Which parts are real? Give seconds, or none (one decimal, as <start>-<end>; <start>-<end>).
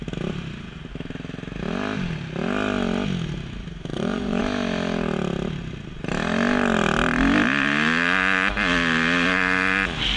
0.0-3.9; 4.4-10.2